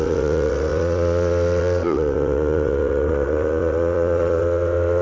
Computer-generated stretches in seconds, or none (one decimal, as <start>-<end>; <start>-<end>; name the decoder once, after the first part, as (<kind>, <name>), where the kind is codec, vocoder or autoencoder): 0.0-5.0 (vocoder, WaveNeXt)